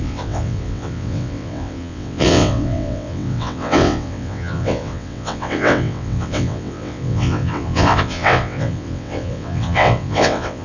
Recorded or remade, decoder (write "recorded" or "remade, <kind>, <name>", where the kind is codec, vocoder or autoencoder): remade, vocoder, WaveNeXt